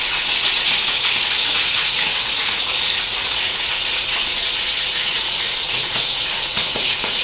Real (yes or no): no